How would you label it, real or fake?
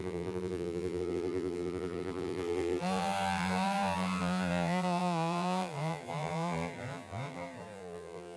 fake